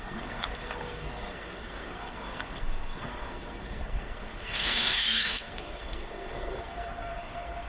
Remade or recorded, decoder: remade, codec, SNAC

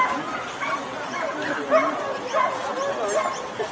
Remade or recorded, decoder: recorded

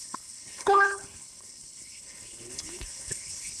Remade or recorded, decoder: remade, codec, HILCodec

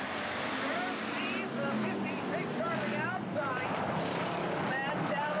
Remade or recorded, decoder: recorded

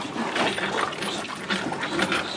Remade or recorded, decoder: recorded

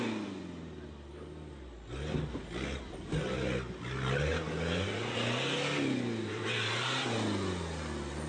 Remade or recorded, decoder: recorded